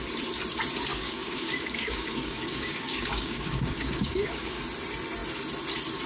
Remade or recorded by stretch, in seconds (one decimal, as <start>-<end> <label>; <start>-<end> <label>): 0.0-0.9 recorded; 0.9-4.6 remade; 4.6-6.1 recorded